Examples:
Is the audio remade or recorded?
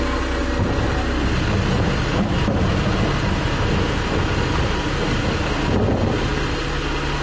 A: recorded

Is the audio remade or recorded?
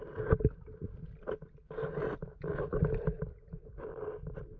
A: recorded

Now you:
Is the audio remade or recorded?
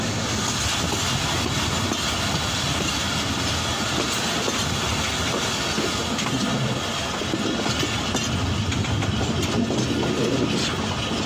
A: recorded